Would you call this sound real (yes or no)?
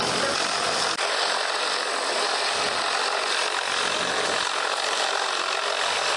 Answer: yes